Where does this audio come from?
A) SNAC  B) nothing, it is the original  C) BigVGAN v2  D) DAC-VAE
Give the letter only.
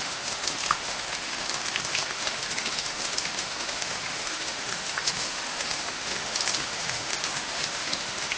D